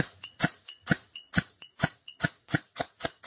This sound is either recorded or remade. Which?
remade